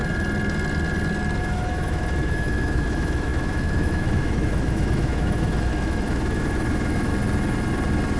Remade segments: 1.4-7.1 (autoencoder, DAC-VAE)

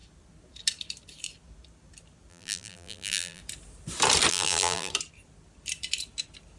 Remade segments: 2.3-3.4 (vocoder, BigVGAN v2); 4.3-4.9

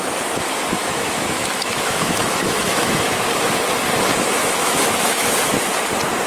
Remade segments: 0.8-3.4 (autoencoder, DAC-VAE); 4.4-5.3

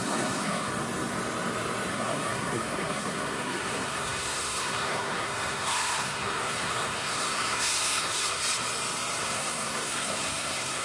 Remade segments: 0.0-0.7 (codec, SNAC); 1.9-8.4; 9.2-10.8

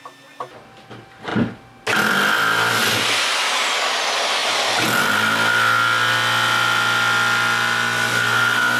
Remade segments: none

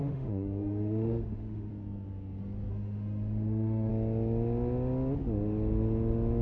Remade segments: 0.0-1.7 (autoencoder, DAC-VAE); 2.7-3.9

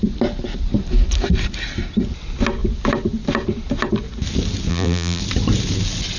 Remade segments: 4.7-5.2 (vocoder, BigVGAN v2)